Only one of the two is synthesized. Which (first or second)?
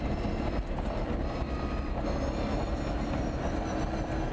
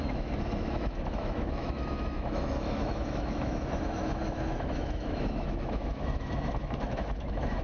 second